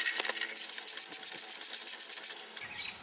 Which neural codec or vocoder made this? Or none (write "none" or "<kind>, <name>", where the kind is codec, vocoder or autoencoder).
none